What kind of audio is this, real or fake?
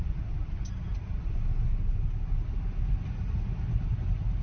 real